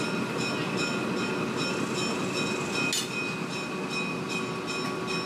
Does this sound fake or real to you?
real